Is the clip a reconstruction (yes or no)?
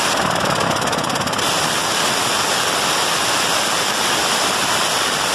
no